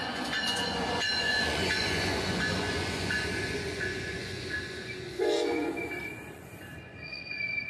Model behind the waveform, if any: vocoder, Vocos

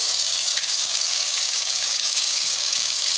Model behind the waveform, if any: codec, DAC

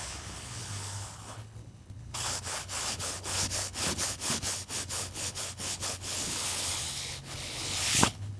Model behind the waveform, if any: codec, HILCodec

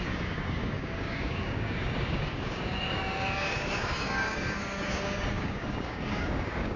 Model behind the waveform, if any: codec, DAC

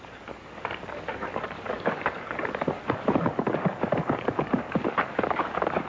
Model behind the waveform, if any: codec, DAC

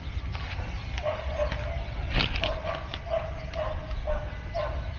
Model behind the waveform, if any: none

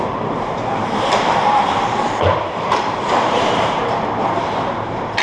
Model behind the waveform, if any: vocoder, BigVGAN v2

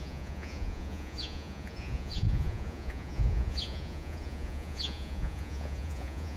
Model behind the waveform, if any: vocoder, Vocos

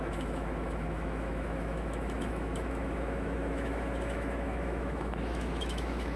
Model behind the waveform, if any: autoencoder, DAC-VAE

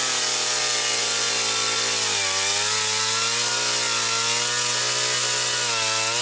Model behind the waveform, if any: none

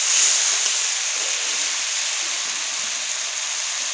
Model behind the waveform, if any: none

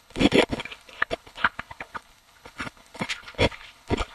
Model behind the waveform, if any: codec, HILCodec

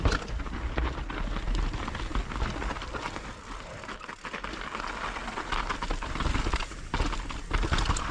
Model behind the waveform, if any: none